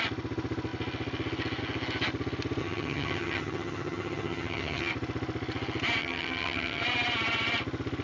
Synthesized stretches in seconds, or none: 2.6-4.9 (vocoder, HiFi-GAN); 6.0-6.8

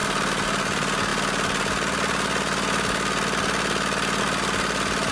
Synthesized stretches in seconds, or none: none